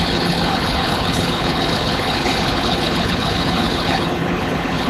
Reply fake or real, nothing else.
fake